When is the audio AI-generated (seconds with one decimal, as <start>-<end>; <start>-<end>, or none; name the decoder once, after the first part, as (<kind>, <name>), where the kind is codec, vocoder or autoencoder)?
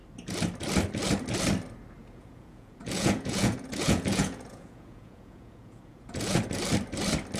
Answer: 2.0-6.4 (vocoder, Vocos)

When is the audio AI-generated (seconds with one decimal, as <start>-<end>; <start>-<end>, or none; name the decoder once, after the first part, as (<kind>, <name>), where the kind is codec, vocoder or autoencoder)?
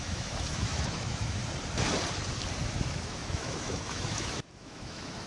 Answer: 0.0-1.4 (autoencoder, DAC-VAE); 2.7-5.3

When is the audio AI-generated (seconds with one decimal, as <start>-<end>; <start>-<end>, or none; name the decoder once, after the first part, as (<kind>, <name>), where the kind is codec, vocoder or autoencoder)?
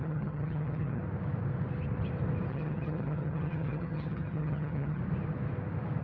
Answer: 0.0-1.0 (vocoder, HiFi-GAN); 2.5-5.0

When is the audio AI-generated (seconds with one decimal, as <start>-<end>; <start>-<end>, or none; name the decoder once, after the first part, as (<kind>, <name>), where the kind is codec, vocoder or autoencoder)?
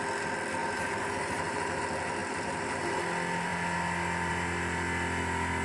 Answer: 0.6-1.8 (vocoder, BigVGAN v2); 2.2-2.8